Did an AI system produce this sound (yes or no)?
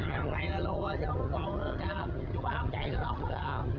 yes